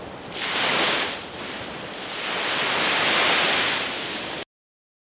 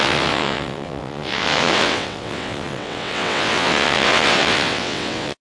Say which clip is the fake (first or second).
second